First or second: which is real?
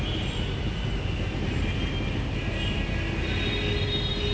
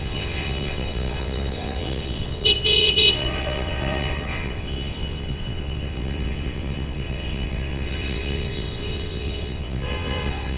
first